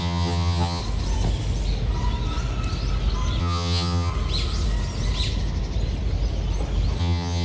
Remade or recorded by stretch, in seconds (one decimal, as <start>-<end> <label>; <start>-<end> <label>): 0.0-0.8 remade; 0.8-3.4 recorded; 3.4-4.1 remade; 4.1-7.0 recorded; 7.0-7.4 remade